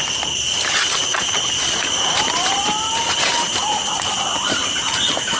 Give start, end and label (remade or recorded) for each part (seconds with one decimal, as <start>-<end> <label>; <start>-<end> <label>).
0.0-5.4 remade